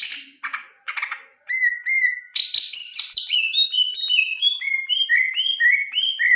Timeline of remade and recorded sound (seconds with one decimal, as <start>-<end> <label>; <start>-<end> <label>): 0.0-1.3 recorded; 1.3-2.2 remade; 2.2-2.8 recorded; 2.8-5.1 remade; 5.1-6.4 recorded